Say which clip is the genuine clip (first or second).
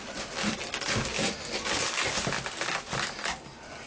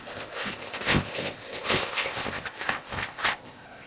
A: first